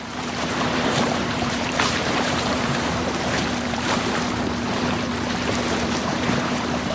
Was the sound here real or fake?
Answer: fake